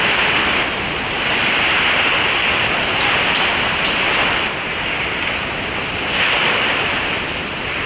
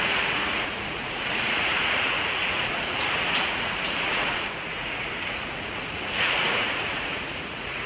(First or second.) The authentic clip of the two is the first